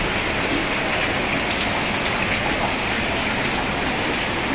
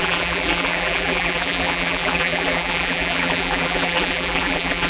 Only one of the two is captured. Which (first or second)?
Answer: first